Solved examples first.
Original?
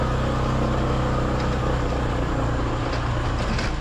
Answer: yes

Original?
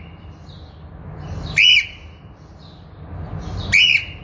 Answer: yes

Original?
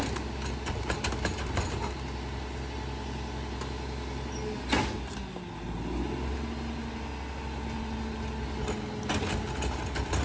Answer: yes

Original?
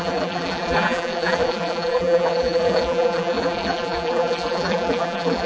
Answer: no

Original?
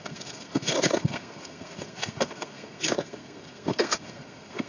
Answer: no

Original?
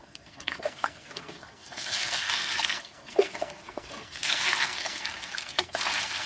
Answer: no